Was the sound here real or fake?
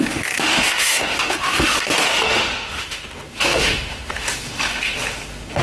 fake